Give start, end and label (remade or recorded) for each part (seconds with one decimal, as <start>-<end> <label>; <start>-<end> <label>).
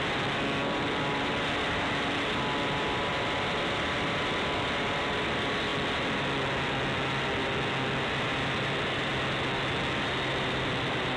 0.0-5.7 remade; 5.7-8.1 recorded; 8.1-9.1 remade; 9.1-10.3 recorded; 10.3-11.2 remade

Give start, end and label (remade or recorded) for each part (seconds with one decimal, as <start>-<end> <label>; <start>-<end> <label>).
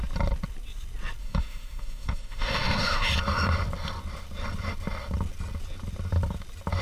0.0-1.2 recorded; 1.2-3.1 remade; 3.1-6.8 recorded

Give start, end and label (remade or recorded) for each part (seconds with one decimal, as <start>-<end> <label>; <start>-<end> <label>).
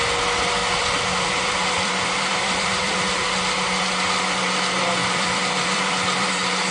0.0-0.6 recorded; 0.6-3.0 remade; 3.0-5.0 recorded; 5.0-6.3 remade; 6.3-6.7 recorded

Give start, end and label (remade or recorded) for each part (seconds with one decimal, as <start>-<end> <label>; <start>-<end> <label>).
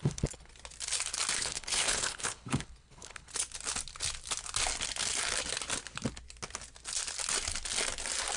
0.0-0.5 remade; 0.5-1.4 recorded; 1.4-3.3 remade; 3.3-8.4 recorded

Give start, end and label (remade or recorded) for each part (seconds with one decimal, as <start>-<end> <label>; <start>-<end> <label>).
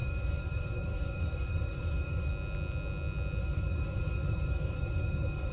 0.0-2.3 remade; 2.3-3.4 recorded; 3.4-5.5 remade